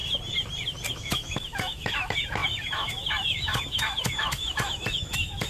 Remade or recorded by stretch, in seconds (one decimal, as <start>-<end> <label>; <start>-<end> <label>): 0.0-0.9 recorded; 0.9-5.5 remade